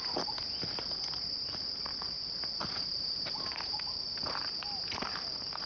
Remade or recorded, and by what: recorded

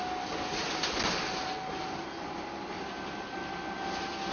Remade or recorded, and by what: recorded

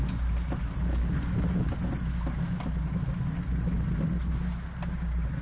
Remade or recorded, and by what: recorded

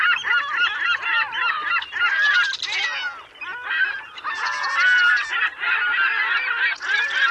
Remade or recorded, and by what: recorded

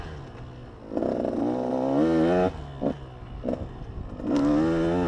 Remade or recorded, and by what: recorded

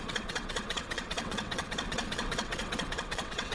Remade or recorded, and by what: remade, vocoder, WaveNeXt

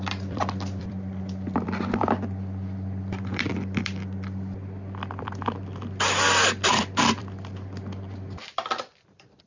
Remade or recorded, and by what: remade, vocoder, BigVGAN v2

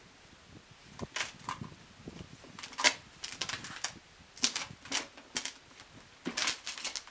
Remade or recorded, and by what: recorded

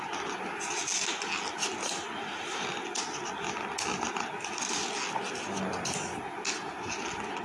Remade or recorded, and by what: recorded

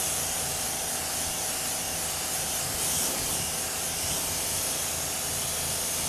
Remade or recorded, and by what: recorded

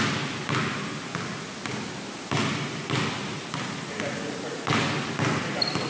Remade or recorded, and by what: recorded